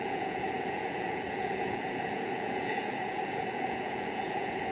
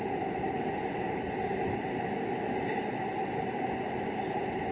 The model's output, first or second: first